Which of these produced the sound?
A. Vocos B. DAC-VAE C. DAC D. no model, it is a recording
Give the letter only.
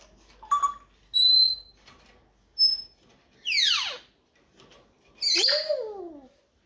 D